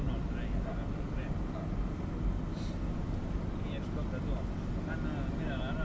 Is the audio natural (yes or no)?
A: yes